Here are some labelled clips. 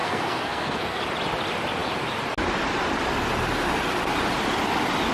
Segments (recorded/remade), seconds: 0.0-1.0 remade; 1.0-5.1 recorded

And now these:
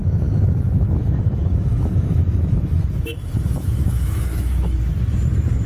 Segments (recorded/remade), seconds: 0.0-5.7 remade

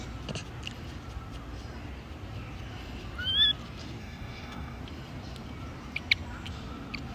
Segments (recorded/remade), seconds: 0.0-4.0 recorded; 4.0-4.8 remade; 4.8-7.1 recorded

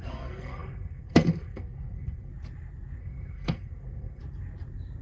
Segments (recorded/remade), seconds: 0.0-2.3 remade; 2.3-3.0 recorded; 3.0-4.2 remade; 4.2-5.0 recorded

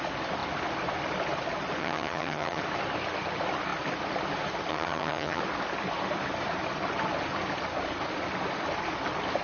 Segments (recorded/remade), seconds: 0.0-1.8 recorded; 1.8-2.6 remade; 2.6-4.7 recorded; 4.7-5.4 remade; 5.4-9.4 recorded